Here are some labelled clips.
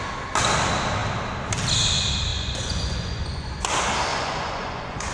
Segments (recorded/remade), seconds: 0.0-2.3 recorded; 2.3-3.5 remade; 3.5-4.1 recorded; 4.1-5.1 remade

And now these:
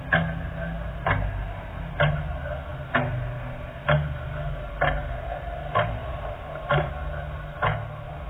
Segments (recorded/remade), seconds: 0.0-6.0 recorded; 6.0-6.9 remade; 6.9-8.3 recorded

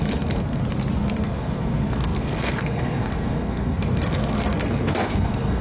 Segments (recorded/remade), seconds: 0.0-0.6 remade; 0.6-1.2 recorded; 1.2-5.6 remade

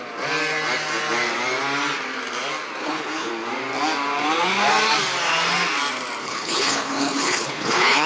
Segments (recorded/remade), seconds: 0.0-2.8 recorded; 2.8-3.3 remade; 3.3-6.2 recorded; 6.2-8.1 remade